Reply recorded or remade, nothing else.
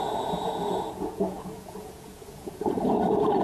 remade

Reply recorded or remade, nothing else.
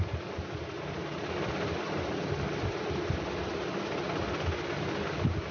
recorded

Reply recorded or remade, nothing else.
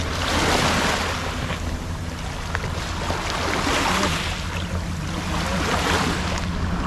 recorded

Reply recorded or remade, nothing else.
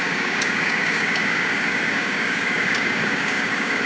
remade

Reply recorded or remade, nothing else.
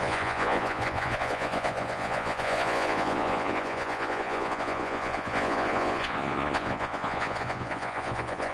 remade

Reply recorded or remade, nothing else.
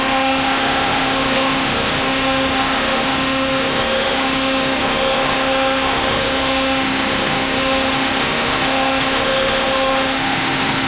remade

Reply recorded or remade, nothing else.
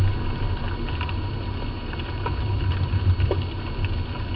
recorded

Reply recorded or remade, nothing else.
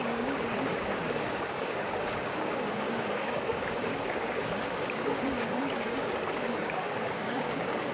remade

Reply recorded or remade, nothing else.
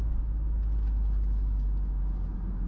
recorded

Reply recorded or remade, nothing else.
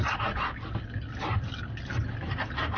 recorded